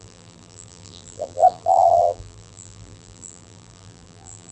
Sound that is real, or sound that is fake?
fake